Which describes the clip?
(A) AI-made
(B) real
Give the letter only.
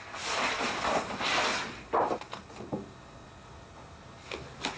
B